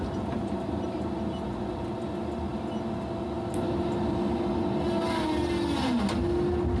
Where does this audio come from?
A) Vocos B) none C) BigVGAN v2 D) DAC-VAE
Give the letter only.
B